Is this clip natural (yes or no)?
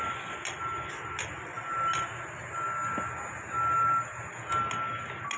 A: yes